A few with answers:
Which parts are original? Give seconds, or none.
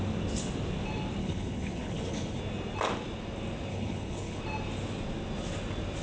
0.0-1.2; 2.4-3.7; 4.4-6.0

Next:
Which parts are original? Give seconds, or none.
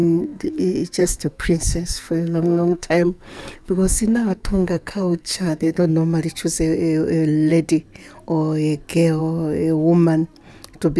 0.6-1.0; 5.9-11.0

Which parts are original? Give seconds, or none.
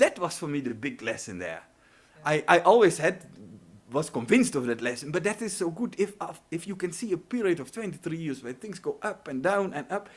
0.0-0.7; 1.6-10.2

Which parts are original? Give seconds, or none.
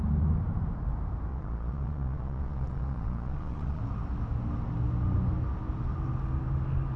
0.0-1.3; 3.8-7.0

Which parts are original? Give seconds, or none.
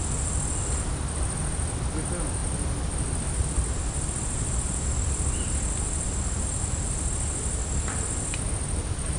0.0-9.2